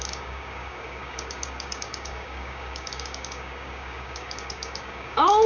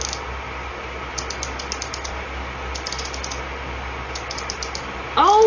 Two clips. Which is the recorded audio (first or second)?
second